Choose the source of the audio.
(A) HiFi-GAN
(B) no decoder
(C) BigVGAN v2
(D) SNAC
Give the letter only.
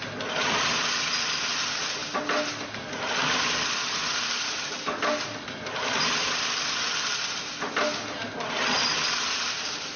B